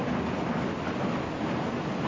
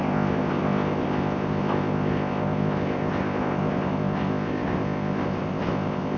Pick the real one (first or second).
first